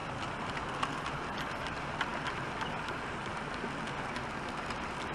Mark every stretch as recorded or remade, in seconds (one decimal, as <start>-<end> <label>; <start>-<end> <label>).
0.0-5.1 recorded